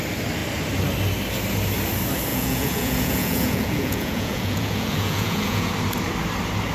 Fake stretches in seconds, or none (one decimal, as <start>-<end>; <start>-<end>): 2.3-5.7